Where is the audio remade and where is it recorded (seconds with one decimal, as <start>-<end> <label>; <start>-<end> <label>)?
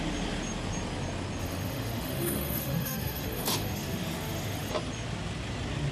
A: 0.0-1.4 recorded; 1.4-4.7 remade; 4.7-5.9 recorded